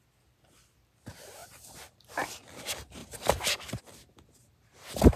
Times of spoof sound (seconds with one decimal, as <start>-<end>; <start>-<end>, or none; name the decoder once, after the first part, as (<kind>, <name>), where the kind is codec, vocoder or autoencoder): 3.0-3.8 (vocoder, BigVGAN v2)